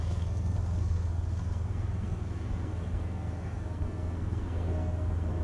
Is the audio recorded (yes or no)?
no